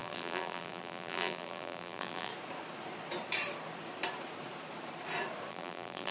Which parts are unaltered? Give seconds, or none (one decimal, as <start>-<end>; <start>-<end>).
2.3-5.5